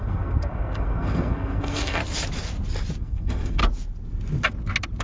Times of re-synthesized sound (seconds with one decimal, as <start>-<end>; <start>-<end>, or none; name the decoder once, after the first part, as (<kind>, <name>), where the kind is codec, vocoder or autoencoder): 0.0-2.0 (codec, SNAC); 3.0-3.6